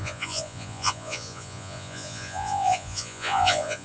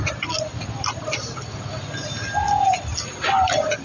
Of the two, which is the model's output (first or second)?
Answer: first